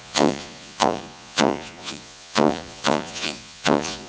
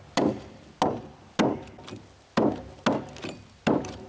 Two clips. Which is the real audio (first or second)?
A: second